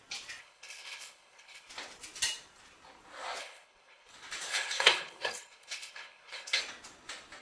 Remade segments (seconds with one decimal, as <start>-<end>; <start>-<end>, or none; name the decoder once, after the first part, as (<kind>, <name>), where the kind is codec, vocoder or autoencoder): 0.4-1.7 (codec, HILCodec); 3.4-4.1; 4.5-6.6